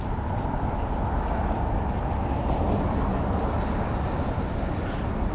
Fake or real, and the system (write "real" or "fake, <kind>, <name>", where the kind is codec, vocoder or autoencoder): real